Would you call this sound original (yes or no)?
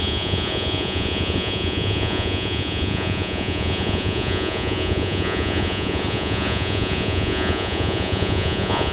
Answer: no